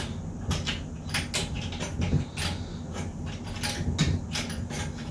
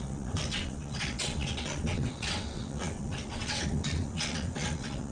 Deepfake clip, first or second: second